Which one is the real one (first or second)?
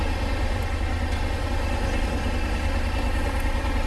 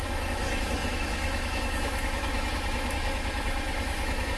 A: first